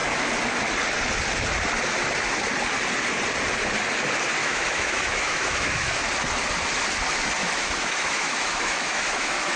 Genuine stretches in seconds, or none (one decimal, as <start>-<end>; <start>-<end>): 0.0-4.4; 6.0-7.4